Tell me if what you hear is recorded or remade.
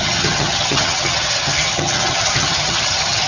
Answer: remade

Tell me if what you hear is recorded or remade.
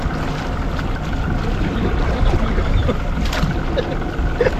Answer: recorded